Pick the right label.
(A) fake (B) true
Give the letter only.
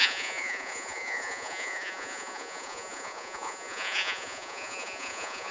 A